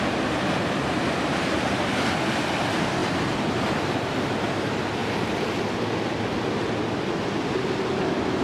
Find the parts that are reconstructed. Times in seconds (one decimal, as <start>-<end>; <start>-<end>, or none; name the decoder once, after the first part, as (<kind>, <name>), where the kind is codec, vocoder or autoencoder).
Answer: none